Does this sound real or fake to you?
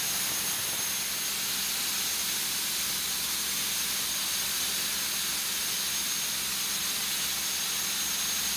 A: real